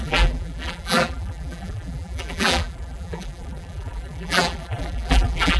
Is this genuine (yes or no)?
no